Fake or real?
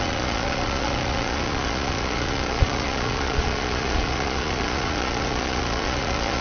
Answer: fake